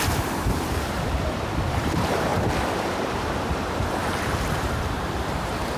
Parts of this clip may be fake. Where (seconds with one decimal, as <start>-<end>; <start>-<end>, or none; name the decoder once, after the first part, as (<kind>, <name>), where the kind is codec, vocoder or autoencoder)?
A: 0.0-2.3 (vocoder, BigVGAN v2); 3.1-5.8